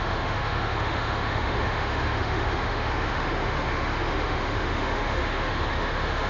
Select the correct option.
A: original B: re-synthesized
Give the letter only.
B